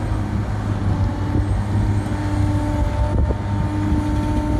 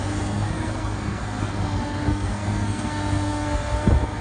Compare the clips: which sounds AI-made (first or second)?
second